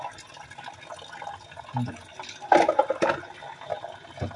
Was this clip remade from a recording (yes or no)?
no